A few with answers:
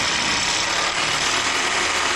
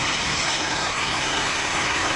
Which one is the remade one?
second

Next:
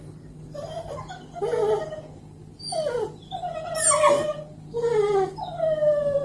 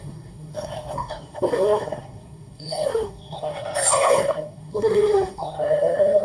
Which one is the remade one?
second